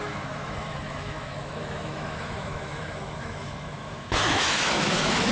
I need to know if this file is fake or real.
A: fake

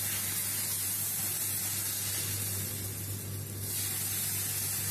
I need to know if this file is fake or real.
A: real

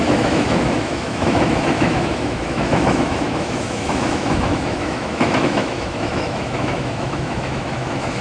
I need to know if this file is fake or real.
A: fake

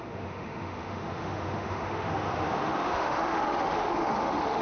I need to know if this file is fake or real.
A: fake